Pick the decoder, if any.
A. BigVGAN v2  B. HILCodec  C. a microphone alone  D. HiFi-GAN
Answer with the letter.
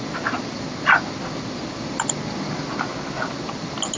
C